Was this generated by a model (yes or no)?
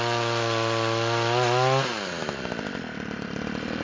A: no